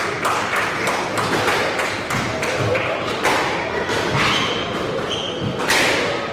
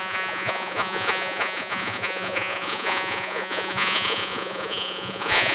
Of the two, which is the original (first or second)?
first